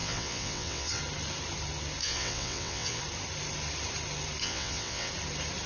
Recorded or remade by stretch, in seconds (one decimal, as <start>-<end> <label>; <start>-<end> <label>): 0.0-1.0 remade; 1.0-2.0 recorded; 2.0-3.0 remade; 3.0-4.4 recorded; 4.4-5.1 remade; 5.1-5.7 recorded